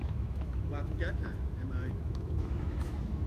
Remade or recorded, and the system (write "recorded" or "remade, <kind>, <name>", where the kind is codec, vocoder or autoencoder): remade, autoencoder, DAC-VAE